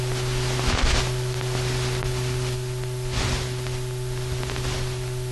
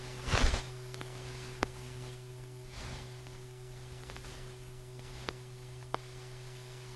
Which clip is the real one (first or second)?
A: first